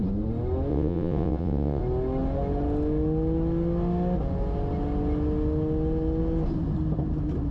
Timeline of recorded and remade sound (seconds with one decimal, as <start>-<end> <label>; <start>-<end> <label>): 0.0-0.7 recorded; 0.7-1.8 remade; 1.8-7.5 recorded

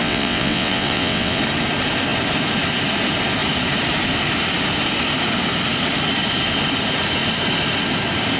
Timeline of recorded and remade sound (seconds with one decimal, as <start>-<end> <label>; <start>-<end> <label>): 0.0-1.4 remade; 1.4-8.4 recorded

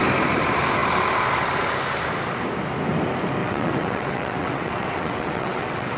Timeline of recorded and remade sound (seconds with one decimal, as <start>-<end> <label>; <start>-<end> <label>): 0.0-3.4 recorded; 3.4-6.0 remade

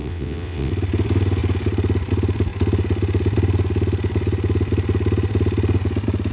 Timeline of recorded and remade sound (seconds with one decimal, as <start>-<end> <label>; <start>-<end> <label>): 0.0-0.7 remade; 0.7-6.3 recorded